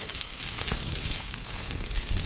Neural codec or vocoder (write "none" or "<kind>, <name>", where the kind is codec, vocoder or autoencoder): codec, SNAC